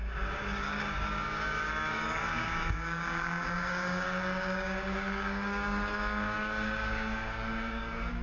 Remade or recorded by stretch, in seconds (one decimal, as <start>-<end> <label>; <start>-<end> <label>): 0.0-8.2 remade